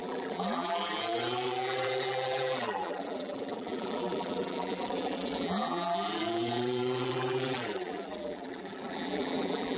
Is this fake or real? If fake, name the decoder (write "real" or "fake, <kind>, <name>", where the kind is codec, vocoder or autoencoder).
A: fake, vocoder, BigVGAN v2